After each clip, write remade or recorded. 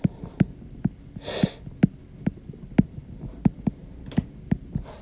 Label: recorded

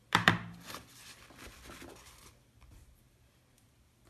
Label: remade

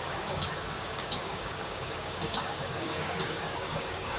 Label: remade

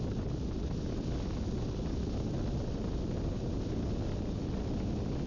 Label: recorded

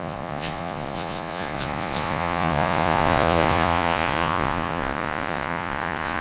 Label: remade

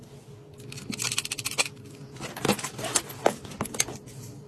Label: recorded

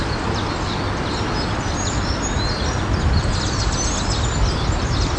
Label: recorded